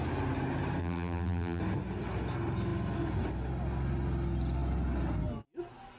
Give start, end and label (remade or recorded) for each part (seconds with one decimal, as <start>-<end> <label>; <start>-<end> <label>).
0.0-0.8 recorded; 0.8-1.6 remade; 1.6-6.0 recorded